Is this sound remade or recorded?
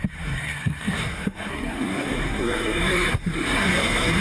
remade